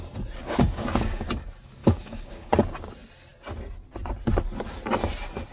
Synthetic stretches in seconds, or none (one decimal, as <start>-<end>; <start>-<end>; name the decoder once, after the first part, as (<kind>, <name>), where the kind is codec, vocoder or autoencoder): 0.4-1.3 (codec, DAC); 1.8-2.5